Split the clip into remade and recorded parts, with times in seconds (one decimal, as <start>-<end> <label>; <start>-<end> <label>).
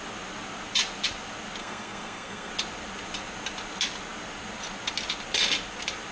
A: 0.0-1.6 recorded; 1.6-2.5 remade; 2.5-6.1 recorded